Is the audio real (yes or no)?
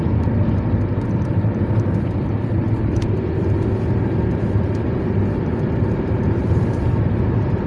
no